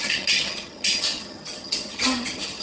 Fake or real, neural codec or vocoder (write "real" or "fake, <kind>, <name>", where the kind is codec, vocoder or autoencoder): fake, vocoder, HiFi-GAN